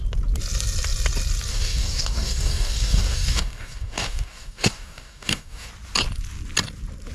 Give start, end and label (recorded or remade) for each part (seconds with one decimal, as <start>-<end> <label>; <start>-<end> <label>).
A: 0.0-1.5 recorded; 1.5-5.7 remade; 5.7-7.1 recorded